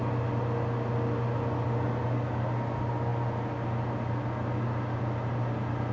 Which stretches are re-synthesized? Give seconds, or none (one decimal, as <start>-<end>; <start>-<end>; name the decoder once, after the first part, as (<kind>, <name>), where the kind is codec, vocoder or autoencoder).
none